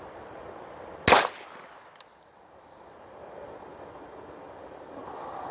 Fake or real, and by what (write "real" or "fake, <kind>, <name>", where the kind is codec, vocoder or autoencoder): real